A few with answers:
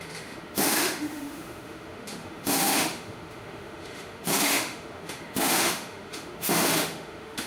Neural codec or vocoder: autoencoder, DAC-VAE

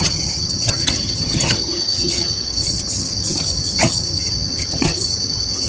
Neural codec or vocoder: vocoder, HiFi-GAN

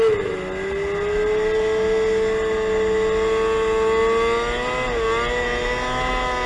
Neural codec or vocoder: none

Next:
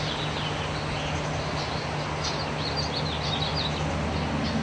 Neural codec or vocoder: none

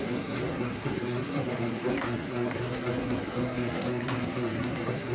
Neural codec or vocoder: codec, SNAC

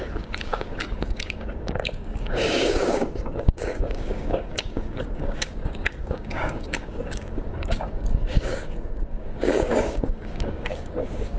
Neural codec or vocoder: codec, DAC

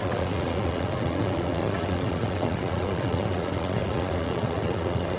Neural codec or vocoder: vocoder, Vocos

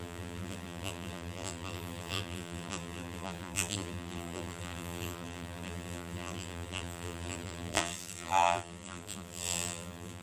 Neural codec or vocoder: vocoder, BigVGAN v2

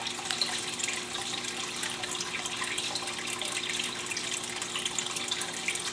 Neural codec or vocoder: none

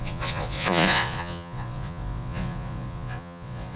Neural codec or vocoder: vocoder, Vocos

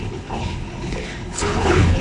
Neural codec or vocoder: codec, HILCodec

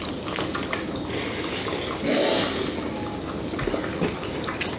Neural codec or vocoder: none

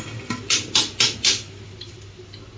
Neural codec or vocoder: none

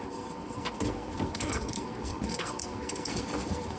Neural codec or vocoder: codec, SNAC